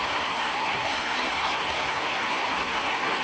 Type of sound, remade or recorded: remade